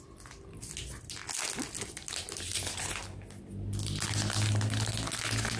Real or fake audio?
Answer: real